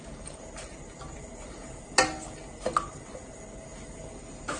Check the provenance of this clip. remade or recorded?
recorded